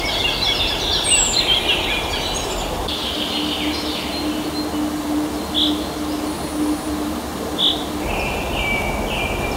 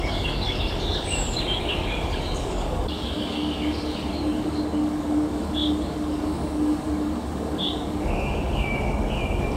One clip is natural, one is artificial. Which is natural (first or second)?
first